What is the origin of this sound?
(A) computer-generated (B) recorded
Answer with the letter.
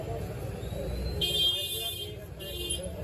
B